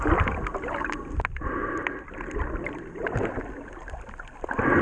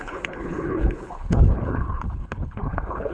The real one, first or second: first